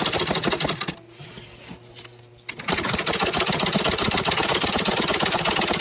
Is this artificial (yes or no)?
no